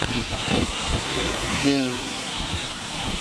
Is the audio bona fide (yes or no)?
no